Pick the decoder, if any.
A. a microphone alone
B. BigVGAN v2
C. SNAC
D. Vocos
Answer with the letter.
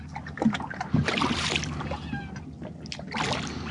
A